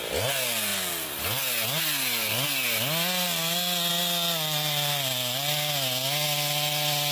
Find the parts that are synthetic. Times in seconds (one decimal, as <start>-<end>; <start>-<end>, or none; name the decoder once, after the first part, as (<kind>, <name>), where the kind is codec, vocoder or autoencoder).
none